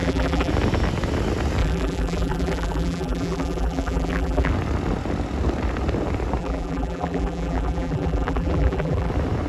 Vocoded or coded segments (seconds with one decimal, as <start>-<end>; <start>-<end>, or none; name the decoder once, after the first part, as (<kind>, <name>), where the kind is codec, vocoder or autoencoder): 0.0-0.5 (vocoder, BigVGAN v2); 1.6-4.5; 6.4-9.1